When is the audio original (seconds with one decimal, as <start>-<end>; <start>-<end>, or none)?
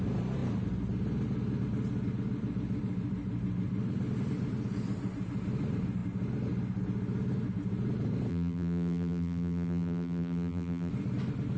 0.0-8.3; 10.9-11.6